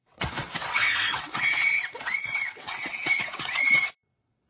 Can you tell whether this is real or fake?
fake